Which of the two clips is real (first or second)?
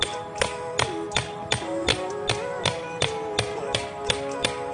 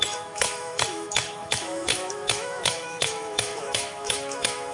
first